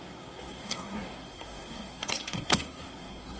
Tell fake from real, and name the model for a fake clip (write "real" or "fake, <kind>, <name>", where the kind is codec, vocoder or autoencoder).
fake, codec, SNAC